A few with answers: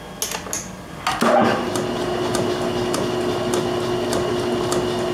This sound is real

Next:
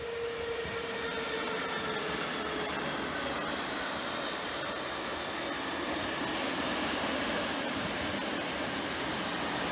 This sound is real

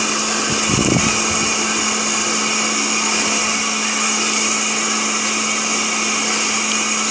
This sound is real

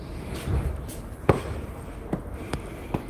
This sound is real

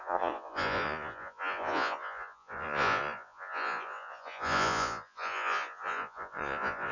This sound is fake